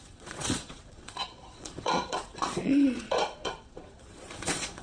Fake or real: fake